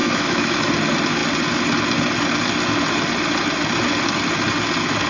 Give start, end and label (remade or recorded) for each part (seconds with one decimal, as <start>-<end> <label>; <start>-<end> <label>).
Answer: 0.0-0.7 remade; 0.7-5.1 recorded